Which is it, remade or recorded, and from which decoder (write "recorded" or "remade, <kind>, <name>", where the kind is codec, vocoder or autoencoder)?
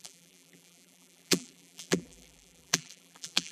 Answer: remade, vocoder, BigVGAN v2